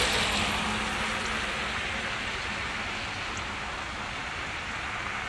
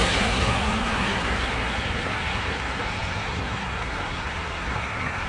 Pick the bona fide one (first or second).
first